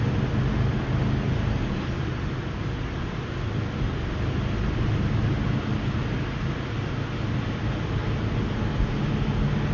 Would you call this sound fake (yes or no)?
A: no